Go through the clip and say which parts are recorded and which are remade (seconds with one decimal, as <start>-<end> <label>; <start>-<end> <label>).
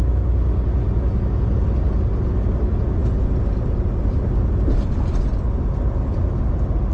0.0-6.9 recorded